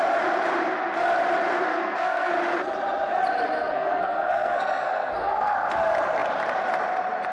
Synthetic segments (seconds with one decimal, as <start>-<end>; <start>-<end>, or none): 1.7-2.3; 3.7-5.7